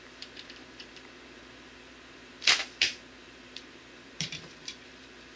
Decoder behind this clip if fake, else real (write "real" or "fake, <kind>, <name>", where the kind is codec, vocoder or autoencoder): fake, vocoder, BigVGAN v2